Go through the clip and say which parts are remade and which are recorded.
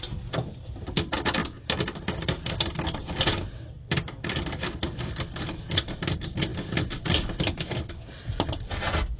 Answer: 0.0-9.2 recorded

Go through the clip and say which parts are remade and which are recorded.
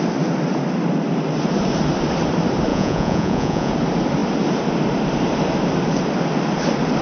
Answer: 0.0-2.7 recorded; 2.7-3.7 remade; 3.7-7.0 recorded